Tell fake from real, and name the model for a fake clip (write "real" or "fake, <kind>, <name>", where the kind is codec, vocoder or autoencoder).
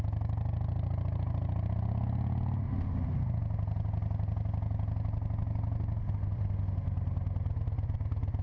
real